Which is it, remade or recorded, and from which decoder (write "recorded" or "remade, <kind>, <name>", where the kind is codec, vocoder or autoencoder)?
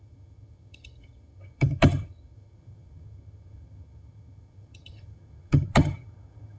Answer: remade, vocoder, HiFi-GAN